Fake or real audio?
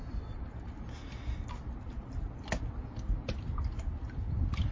real